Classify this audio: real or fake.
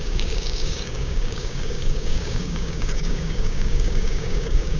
fake